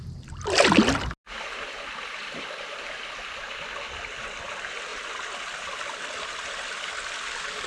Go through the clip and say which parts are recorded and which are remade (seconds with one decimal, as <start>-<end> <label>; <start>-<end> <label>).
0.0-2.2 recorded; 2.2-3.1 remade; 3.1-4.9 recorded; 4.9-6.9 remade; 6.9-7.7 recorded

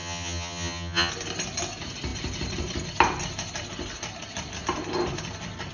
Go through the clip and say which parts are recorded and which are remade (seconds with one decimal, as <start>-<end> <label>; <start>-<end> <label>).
0.0-1.1 remade; 1.1-5.7 recorded

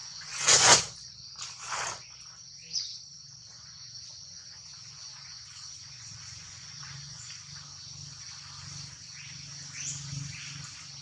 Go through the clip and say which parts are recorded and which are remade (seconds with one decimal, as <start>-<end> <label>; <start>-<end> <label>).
0.0-0.8 remade; 0.8-3.5 recorded; 3.5-7.3 remade; 7.3-11.0 recorded

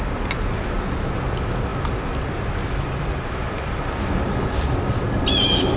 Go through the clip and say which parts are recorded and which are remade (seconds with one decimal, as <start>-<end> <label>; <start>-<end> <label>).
0.0-1.7 recorded; 1.7-4.7 remade; 4.7-5.8 recorded

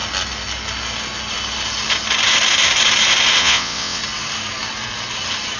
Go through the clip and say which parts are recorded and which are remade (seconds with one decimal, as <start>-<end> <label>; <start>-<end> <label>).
0.0-3.4 recorded; 3.4-4.0 remade; 4.0-5.6 recorded